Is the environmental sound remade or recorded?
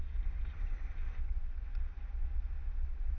recorded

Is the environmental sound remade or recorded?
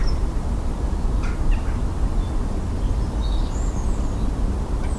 recorded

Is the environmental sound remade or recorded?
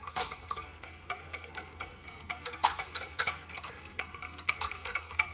remade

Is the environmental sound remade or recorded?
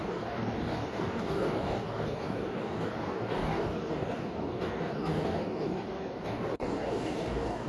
remade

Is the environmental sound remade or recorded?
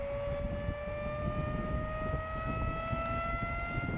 recorded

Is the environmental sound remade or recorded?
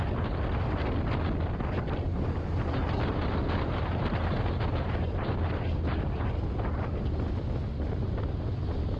recorded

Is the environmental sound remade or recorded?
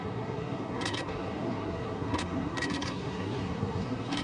remade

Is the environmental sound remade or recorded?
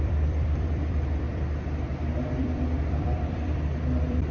remade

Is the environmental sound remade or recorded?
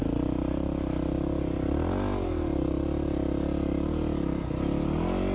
recorded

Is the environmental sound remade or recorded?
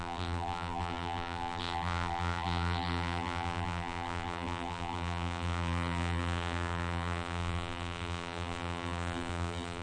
remade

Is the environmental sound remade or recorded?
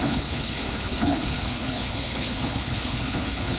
remade